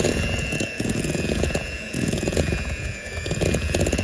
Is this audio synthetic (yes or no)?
yes